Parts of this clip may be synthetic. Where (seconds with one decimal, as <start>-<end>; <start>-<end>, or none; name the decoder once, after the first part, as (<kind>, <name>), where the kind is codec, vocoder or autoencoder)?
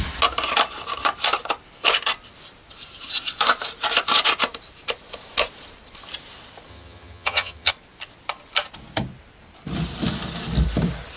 6.7-7.7 (vocoder, HiFi-GAN)